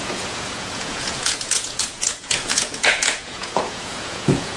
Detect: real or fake fake